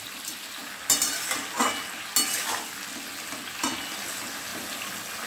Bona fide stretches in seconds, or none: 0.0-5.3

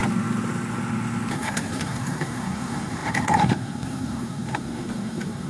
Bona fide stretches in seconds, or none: 0.0-1.3

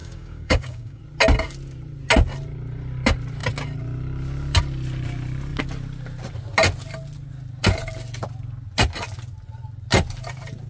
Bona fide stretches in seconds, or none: 1.0-10.7